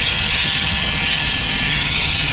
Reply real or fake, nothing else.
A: fake